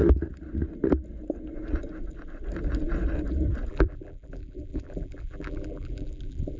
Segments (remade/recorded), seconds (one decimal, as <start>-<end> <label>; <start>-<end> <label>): 0.0-3.7 recorded; 3.7-6.6 remade